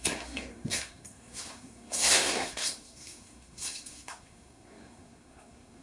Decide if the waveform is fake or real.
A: fake